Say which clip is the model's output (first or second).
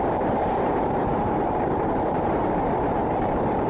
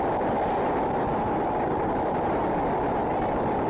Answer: first